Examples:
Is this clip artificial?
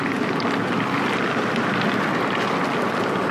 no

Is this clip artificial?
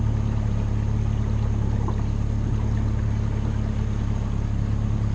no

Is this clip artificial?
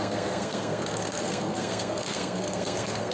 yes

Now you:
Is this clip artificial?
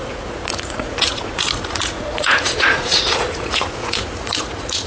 yes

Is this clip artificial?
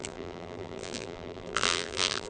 yes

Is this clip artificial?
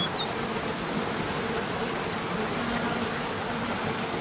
no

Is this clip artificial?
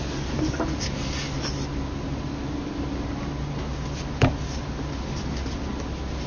no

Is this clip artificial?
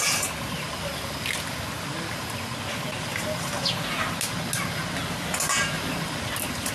no